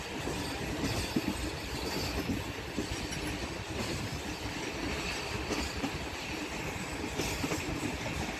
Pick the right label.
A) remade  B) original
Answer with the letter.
B